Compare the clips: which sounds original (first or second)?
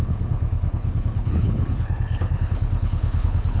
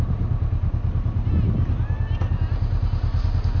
second